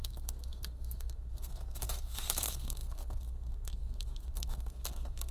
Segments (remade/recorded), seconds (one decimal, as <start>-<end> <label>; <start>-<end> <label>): 0.0-5.3 remade